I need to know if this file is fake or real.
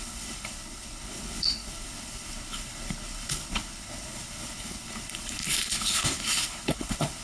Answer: fake